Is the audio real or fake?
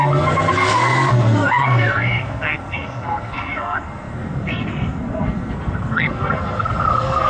fake